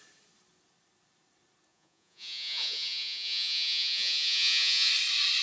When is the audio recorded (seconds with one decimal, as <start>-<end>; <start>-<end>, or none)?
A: 0.0-1.7; 4.9-5.4